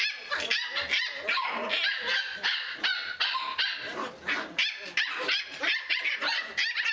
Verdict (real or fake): real